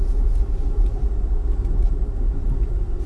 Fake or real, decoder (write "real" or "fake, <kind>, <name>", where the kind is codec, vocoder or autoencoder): real